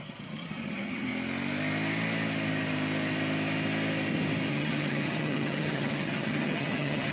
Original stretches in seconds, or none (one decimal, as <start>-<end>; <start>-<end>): 1.1-4.5